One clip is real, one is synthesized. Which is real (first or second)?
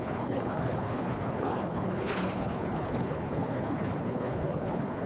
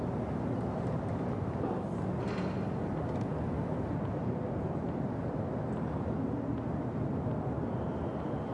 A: second